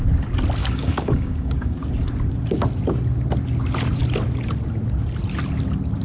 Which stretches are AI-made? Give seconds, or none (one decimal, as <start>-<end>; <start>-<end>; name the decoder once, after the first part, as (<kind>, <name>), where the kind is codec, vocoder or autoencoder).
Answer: 0.6-1.9 (codec, DAC)